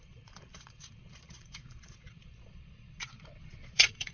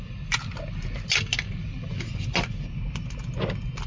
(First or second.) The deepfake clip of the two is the first